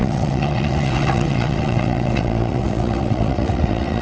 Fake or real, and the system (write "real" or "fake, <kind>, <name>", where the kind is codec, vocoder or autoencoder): fake, vocoder, WaveNeXt